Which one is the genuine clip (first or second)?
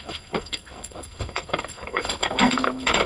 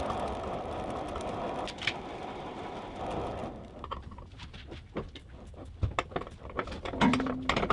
second